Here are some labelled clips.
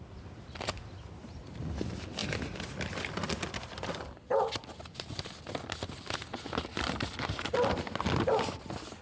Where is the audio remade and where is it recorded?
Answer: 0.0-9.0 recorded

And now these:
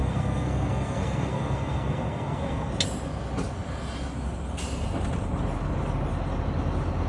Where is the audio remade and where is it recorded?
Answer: 0.0-2.7 remade; 2.7-7.1 recorded

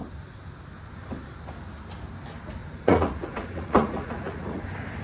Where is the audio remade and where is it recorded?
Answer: 0.0-2.6 recorded; 2.6-4.6 remade; 4.6-5.0 recorded

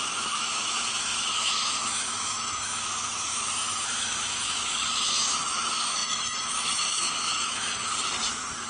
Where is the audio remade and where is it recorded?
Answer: 0.0-7.9 remade; 7.9-8.7 recorded